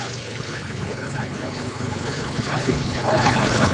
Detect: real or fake fake